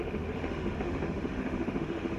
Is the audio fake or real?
fake